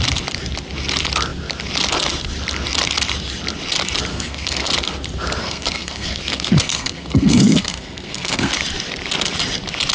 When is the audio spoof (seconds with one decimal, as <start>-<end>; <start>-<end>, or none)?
4.1-4.7; 5.4-8.5